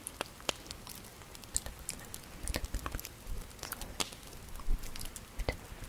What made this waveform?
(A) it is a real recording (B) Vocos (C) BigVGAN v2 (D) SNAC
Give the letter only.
A